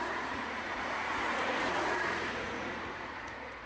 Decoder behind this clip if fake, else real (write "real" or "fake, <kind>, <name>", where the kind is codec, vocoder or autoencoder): fake, vocoder, Vocos